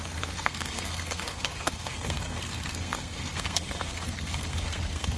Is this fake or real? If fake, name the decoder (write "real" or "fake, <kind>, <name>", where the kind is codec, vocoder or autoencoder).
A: fake, codec, SNAC